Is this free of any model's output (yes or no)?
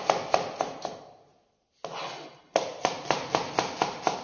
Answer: yes